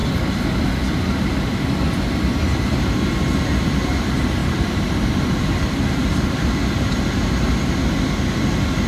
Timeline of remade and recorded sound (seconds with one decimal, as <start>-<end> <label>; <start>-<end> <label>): 0.0-4.4 recorded; 4.4-6.1 remade; 6.1-8.9 recorded